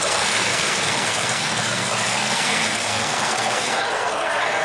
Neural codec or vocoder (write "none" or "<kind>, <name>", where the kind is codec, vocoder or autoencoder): codec, SNAC